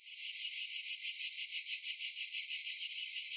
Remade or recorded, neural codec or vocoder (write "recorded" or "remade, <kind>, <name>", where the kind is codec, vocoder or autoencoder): remade, vocoder, BigVGAN v2